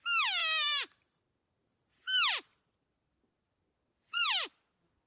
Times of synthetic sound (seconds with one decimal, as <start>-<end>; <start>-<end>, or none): none

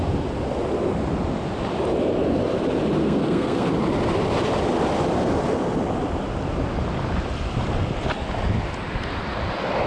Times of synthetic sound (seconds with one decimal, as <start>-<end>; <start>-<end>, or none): 3.0-3.7

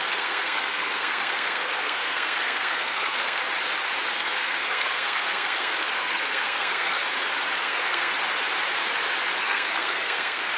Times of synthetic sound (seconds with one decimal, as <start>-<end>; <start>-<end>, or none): 0.0-3.4; 4.1-7.0; 7.6-8.1; 9.4-10.6

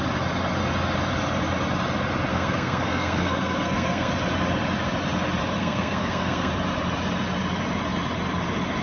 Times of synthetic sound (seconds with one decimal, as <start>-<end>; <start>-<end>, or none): 2.3-4.1; 5.6-6.5

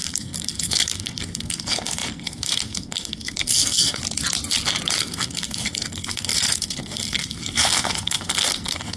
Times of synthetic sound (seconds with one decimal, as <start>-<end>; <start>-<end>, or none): 0.0-4.0; 5.0-9.0